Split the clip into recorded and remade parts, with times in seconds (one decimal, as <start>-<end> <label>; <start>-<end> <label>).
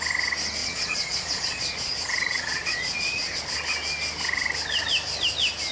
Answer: 0.0-0.6 recorded; 0.6-3.4 remade; 3.4-5.7 recorded